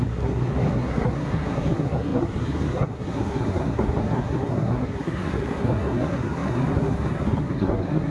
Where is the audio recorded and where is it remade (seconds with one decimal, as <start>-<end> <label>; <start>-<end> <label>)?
0.0-8.1 remade